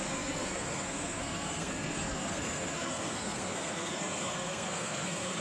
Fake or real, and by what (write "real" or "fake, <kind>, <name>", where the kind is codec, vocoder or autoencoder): fake, codec, SNAC